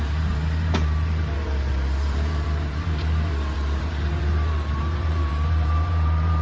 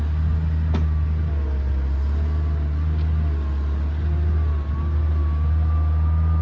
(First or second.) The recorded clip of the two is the second